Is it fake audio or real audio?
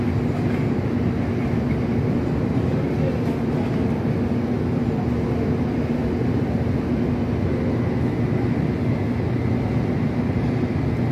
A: real